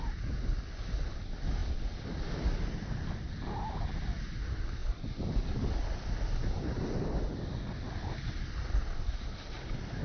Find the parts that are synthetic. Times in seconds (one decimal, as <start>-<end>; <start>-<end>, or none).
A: 0.0-4.8; 8.5-10.0